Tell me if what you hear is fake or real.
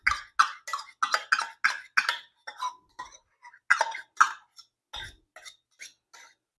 real